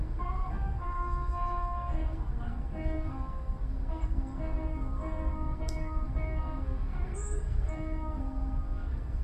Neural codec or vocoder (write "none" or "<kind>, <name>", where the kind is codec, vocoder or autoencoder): codec, SNAC